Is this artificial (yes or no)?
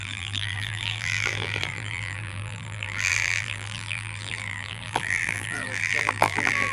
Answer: yes